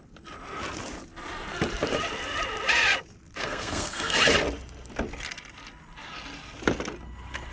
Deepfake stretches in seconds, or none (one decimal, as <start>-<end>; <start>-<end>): 3.4-4.2